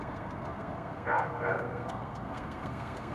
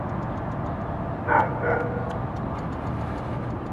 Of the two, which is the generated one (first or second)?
first